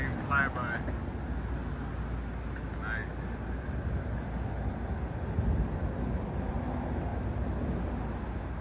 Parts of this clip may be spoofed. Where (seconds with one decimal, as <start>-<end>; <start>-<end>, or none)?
none